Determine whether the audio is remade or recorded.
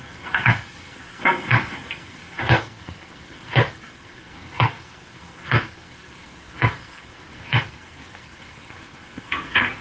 remade